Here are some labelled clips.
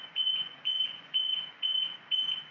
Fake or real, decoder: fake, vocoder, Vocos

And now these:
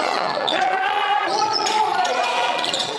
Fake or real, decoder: fake, vocoder, Vocos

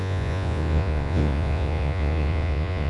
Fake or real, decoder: fake, vocoder, Vocos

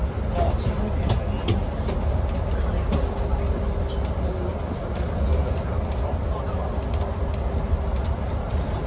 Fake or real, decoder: real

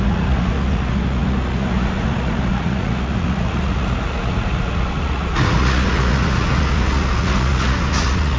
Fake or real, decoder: fake, vocoder, Vocos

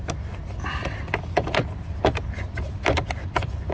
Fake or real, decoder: real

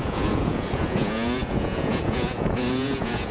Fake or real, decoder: fake, vocoder, Vocos